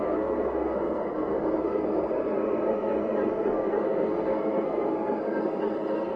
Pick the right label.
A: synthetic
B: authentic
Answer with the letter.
A